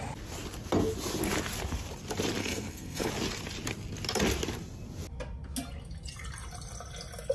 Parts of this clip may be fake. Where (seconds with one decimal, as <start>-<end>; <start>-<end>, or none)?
2.4-3.1